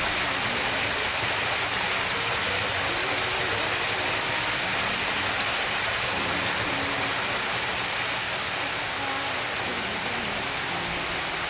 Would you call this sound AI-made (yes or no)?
no